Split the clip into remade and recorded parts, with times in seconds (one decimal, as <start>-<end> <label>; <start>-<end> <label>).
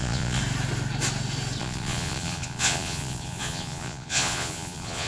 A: 0.0-0.4 remade; 0.4-1.6 recorded; 1.6-5.1 remade